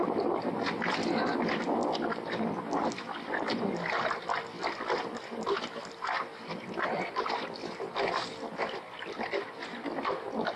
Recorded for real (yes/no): no